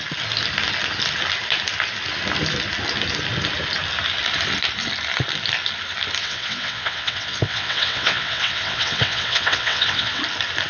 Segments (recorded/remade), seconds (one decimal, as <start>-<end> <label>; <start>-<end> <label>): 0.0-6.2 recorded; 6.2-10.2 remade; 10.2-10.7 recorded